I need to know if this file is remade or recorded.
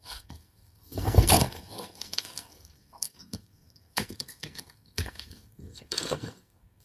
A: remade